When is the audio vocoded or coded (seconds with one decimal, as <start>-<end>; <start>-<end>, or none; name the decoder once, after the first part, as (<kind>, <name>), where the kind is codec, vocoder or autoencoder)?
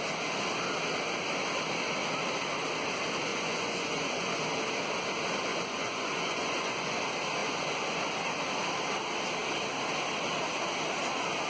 3.3-4.4 (vocoder, Vocos); 5.5-7.0; 7.4-8.0